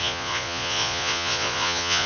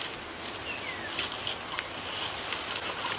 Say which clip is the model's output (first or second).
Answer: first